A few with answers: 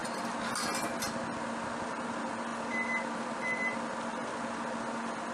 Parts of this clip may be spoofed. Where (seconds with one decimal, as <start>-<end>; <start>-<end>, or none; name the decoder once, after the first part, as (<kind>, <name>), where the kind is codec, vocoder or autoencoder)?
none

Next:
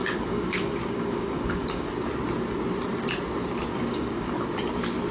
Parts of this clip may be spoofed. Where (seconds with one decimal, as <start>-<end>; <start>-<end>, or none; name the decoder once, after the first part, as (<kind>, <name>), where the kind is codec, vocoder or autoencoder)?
0.0-1.9 (codec, DAC); 3.7-4.3

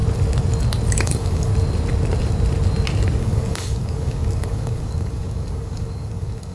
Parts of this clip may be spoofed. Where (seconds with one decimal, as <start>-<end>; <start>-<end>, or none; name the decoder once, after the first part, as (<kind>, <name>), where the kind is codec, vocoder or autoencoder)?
1.0-1.5 (codec, DAC); 3.2-6.5

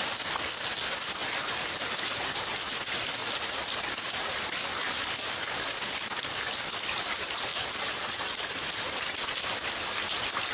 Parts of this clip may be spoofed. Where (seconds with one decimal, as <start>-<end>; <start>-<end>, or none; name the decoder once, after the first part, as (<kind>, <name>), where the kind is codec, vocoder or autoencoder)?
4.6-6.9 (codec, DAC)